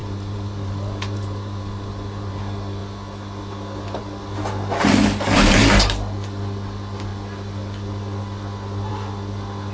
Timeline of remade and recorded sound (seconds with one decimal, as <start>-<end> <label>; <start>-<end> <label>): 0.0-2.4 remade; 2.4-9.7 recorded